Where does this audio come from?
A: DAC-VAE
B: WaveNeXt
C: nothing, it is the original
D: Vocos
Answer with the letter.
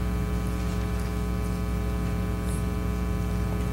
C